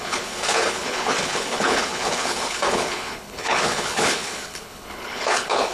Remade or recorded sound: remade